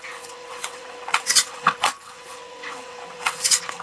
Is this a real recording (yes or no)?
no